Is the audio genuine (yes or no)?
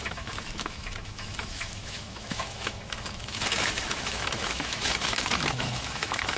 no